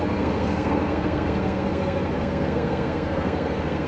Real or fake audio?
fake